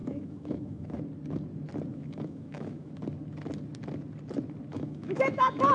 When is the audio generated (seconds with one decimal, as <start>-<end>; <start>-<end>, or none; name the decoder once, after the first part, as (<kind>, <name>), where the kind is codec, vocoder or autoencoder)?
0.0-1.0 (autoencoder, DAC-VAE); 1.9-2.9; 4.7-5.7

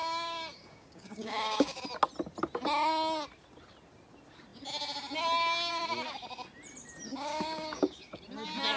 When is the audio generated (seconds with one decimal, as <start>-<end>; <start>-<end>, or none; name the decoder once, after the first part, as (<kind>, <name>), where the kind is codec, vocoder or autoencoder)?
0.0-1.8 (codec, DAC); 7.1-8.2

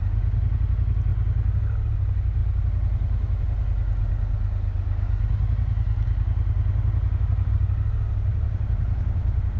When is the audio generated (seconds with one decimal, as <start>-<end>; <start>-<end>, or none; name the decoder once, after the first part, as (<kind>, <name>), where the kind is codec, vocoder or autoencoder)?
8.3-9.6 (vocoder, BigVGAN v2)

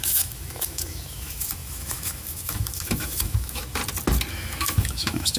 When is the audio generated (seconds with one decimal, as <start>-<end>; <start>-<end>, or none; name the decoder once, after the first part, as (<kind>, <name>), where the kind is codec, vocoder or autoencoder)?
0.0-3.8 (autoencoder, DAC-VAE); 4.3-5.4

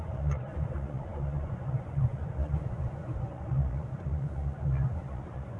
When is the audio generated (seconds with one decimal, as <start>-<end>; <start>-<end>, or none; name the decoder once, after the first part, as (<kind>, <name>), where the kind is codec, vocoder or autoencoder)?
0.0-5.6 (vocoder, Vocos)

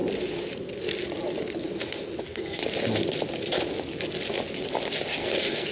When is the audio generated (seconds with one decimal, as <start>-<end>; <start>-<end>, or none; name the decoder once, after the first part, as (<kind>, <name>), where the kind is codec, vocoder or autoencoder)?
2.2-2.6 (codec, SNAC); 5.1-5.7